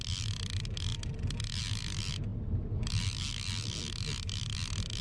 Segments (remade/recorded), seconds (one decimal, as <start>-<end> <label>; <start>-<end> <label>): 0.0-5.0 recorded